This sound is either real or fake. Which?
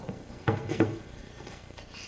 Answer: fake